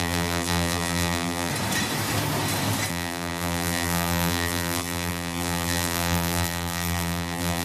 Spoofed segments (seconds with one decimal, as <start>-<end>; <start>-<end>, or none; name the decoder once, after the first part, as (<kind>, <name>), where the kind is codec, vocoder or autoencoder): 0.0-1.5 (vocoder, BigVGAN v2); 2.9-7.6

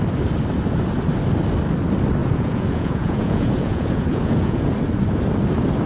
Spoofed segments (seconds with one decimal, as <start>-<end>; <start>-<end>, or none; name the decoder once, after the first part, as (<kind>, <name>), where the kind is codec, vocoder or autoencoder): 2.2-4.7 (vocoder, Vocos)